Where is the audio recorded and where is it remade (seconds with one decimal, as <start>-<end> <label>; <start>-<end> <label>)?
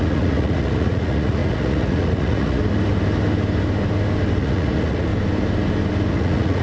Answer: 0.0-2.6 remade; 2.6-4.4 recorded; 4.4-5.1 remade; 5.1-6.1 recorded; 6.1-6.6 remade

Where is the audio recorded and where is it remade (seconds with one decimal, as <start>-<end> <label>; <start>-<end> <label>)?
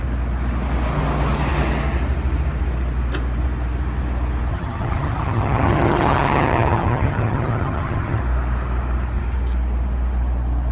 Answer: 0.0-4.5 recorded; 4.5-8.2 remade; 8.2-10.7 recorded